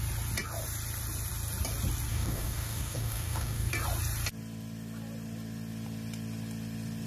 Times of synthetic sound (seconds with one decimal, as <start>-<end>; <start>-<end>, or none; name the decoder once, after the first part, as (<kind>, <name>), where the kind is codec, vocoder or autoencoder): 2.1-3.7 (codec, DAC)